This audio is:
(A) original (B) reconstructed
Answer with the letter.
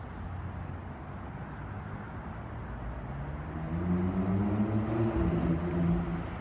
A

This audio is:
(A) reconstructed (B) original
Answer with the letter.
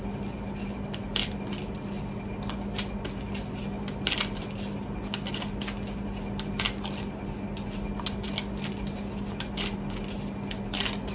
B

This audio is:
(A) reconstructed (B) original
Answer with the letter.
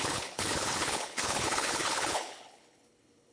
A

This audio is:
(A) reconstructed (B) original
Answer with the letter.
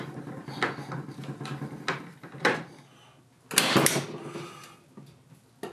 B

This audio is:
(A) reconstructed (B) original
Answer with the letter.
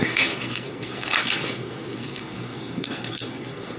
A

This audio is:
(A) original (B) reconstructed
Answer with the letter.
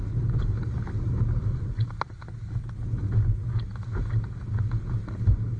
A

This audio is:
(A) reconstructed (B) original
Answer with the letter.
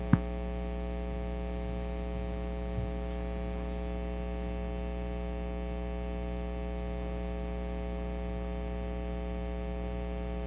B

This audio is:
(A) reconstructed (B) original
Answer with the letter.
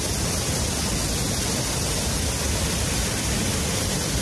B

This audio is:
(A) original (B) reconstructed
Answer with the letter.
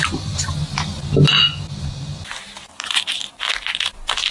A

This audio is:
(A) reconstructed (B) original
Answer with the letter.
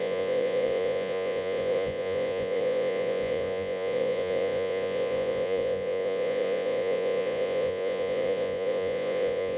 A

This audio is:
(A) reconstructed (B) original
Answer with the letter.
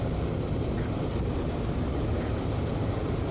A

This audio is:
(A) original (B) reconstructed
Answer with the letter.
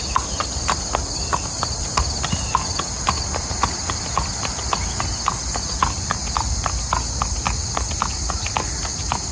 A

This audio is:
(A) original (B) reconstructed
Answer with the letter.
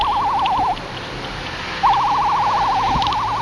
A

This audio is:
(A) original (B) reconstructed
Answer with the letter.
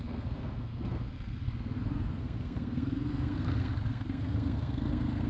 B